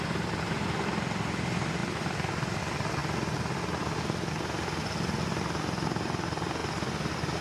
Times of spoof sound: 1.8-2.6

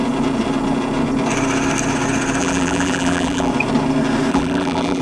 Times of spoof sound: 2.4-3.5; 4.3-5.0

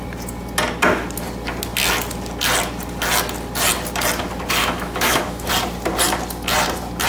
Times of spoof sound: 4.6-5.5

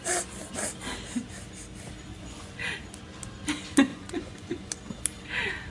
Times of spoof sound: 2.1-2.8; 3.9-4.7